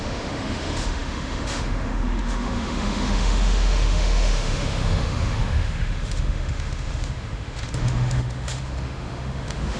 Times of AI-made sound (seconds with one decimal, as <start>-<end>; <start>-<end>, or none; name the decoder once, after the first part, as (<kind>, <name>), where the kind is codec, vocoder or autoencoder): 0.0-9.8 (autoencoder, DAC-VAE)